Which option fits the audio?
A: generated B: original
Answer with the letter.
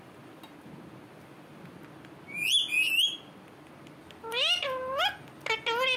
B